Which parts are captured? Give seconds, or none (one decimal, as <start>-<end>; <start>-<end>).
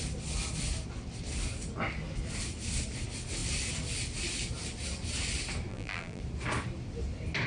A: 0.0-5.7; 6.2-7.5